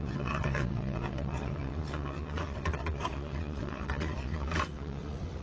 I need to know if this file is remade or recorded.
remade